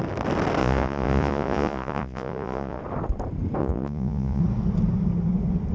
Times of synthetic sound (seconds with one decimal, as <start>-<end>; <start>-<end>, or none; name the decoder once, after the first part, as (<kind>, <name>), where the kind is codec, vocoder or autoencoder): 0.6-2.8 (vocoder, Vocos); 3.6-4.4